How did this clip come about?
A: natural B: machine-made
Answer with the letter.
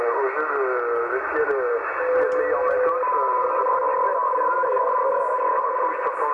A